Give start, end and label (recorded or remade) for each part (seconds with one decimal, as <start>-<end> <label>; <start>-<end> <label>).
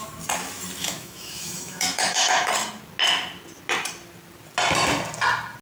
0.0-0.8 recorded; 0.8-2.5 remade; 2.5-5.6 recorded